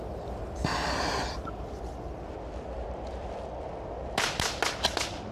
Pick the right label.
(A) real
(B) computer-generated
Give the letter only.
A